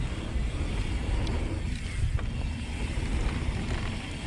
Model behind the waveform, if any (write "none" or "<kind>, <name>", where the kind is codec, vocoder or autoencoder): none